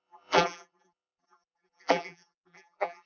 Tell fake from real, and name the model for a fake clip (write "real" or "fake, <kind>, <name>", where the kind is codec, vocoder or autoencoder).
fake, vocoder, BigVGAN v2